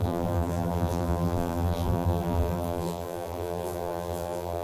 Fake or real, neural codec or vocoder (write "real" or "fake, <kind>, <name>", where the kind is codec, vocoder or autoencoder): fake, vocoder, BigVGAN v2